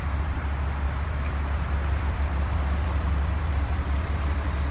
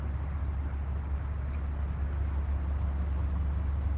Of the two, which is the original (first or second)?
second